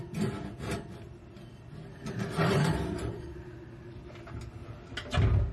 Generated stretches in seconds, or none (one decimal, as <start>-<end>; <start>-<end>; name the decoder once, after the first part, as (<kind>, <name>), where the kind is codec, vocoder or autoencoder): 1.9-4.1 (vocoder, BigVGAN v2)